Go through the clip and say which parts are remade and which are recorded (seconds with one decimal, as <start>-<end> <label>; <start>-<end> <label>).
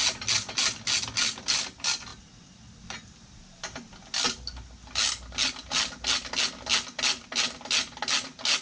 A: 0.0-8.6 recorded